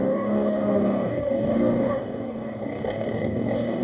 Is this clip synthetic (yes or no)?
yes